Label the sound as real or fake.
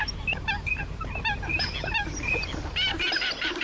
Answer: real